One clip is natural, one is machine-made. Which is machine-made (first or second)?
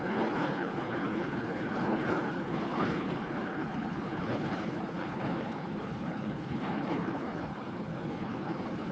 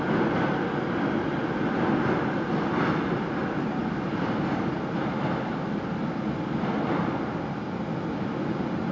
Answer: first